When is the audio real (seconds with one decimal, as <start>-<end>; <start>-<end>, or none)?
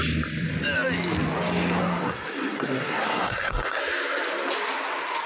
0.0-1.8; 3.8-5.3